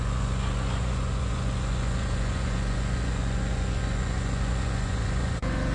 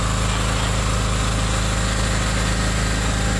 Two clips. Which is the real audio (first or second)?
second